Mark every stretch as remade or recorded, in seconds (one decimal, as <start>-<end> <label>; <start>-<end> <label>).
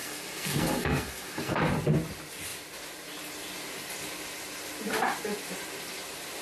0.0-1.6 remade; 1.6-6.4 recorded